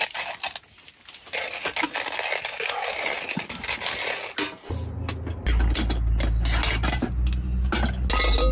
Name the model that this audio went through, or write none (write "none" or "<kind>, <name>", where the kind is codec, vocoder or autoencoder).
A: none